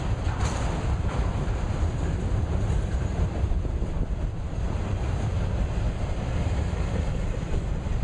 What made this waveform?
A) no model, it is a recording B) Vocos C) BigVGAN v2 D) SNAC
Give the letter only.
C